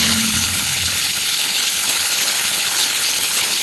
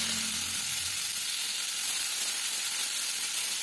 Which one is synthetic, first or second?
first